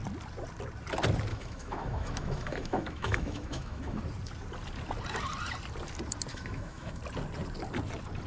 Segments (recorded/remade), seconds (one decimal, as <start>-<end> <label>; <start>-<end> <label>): 0.0-1.3 recorded; 1.3-4.0 remade; 4.0-6.3 recorded; 6.3-7.0 remade; 7.0-8.3 recorded